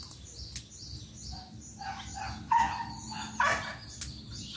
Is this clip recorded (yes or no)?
yes